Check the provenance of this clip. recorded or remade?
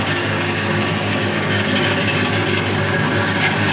remade